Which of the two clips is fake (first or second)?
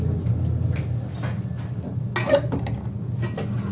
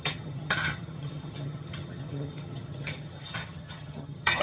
second